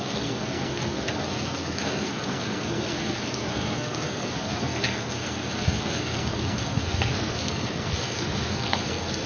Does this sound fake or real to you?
fake